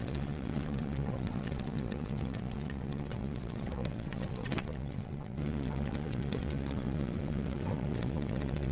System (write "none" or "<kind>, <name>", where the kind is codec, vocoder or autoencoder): vocoder, WaveNeXt